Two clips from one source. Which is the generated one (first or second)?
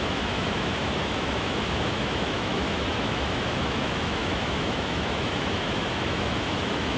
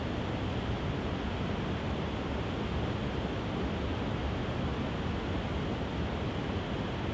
first